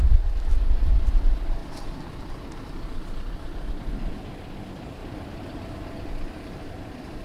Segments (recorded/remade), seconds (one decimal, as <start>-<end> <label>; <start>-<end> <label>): 0.0-7.2 recorded